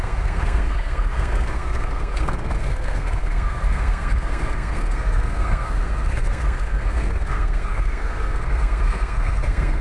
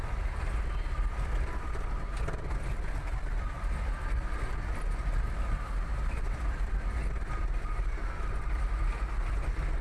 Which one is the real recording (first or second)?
second